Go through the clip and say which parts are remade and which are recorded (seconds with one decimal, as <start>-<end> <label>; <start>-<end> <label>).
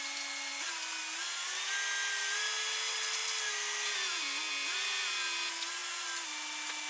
0.0-6.9 recorded